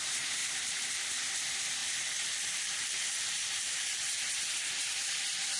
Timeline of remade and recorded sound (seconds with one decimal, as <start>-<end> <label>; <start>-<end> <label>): 0.0-0.4 recorded; 0.4-1.1 remade; 1.1-1.8 recorded; 1.8-4.3 remade; 4.3-5.6 recorded